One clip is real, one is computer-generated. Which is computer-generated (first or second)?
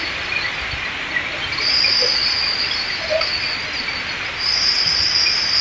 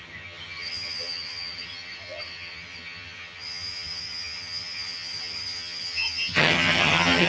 second